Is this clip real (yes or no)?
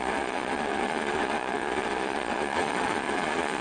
no